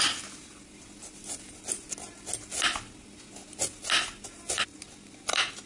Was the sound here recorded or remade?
recorded